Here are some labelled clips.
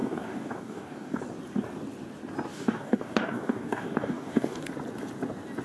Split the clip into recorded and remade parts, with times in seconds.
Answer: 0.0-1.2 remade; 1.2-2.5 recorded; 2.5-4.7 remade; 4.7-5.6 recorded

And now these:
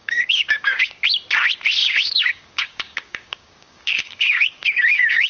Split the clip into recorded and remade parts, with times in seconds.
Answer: 0.0-0.9 remade; 0.9-1.8 recorded; 1.8-5.3 remade